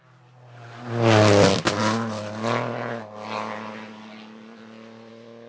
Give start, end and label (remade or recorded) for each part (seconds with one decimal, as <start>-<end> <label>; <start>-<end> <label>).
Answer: 0.0-5.5 recorded